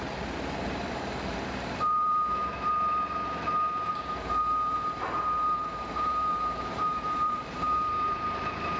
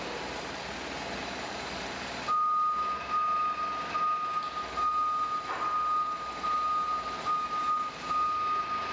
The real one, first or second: second